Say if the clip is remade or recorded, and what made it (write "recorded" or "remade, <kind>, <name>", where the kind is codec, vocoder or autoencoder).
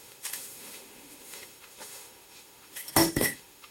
remade, autoencoder, DAC-VAE